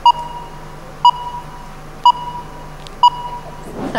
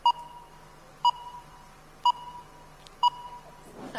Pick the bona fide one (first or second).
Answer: first